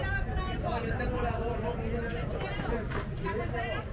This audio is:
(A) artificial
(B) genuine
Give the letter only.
A